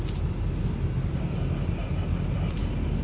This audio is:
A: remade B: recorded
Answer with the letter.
B